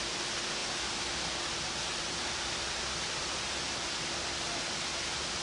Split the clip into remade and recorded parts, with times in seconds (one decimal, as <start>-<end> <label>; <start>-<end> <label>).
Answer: 0.0-5.4 recorded

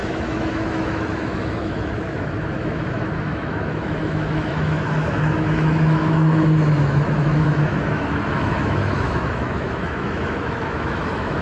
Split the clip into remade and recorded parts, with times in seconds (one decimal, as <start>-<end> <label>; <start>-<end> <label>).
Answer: 0.0-11.4 remade

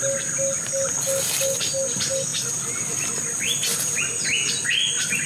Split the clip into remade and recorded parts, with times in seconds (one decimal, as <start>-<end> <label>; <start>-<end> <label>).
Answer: 0.0-2.3 recorded; 2.3-3.2 remade; 3.2-5.3 recorded

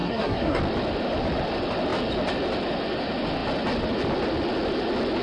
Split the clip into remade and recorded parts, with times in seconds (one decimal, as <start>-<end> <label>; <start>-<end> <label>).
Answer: 0.0-0.6 remade; 0.6-5.2 recorded

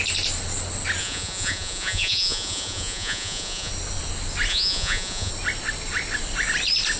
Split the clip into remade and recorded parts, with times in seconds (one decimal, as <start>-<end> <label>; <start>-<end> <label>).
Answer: 0.0-1.0 recorded; 1.0-3.7 remade; 3.7-4.5 recorded; 4.5-5.3 remade; 5.3-7.0 recorded